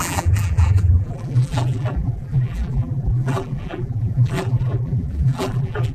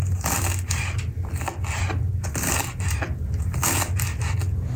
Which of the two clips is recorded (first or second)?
second